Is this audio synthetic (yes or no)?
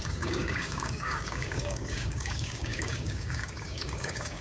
yes